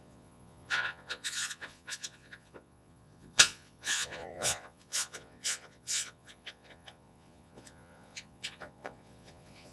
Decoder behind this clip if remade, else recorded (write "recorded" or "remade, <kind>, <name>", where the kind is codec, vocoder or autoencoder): remade, vocoder, Vocos